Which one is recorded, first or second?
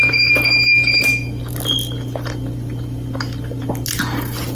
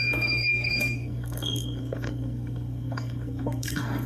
first